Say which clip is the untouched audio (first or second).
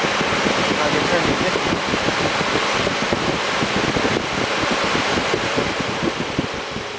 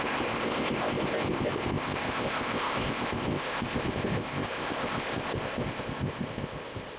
first